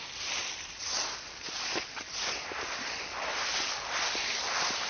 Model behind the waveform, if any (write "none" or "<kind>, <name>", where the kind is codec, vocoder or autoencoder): none